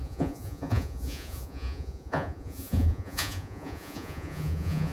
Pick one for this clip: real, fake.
fake